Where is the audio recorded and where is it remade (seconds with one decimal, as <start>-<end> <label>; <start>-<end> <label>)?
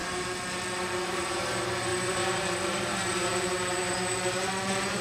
0.0-1.1 recorded; 1.1-5.0 remade